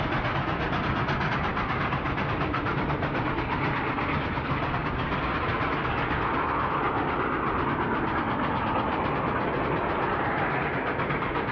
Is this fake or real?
real